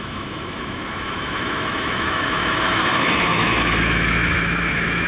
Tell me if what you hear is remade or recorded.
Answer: remade